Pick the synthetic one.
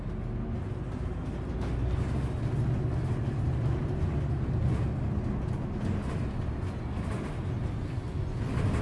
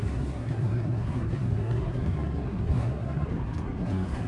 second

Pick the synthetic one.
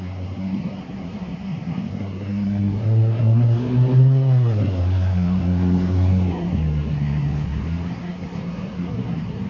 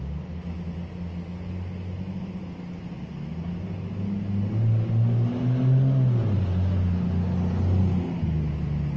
first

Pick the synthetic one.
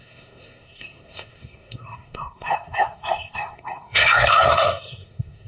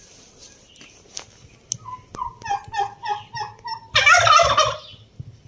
first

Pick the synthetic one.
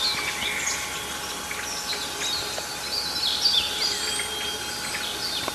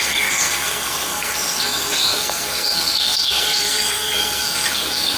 second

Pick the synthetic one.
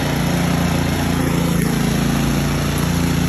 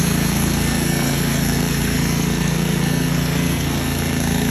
second